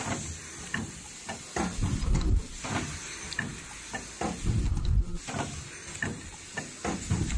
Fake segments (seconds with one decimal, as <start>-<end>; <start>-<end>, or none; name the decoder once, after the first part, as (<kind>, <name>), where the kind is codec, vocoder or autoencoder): none